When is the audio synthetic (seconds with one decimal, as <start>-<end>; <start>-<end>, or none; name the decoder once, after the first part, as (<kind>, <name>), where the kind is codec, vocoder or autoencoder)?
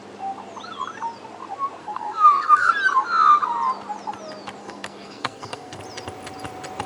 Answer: 1.8-2.7 (codec, SNAC); 4.6-5.8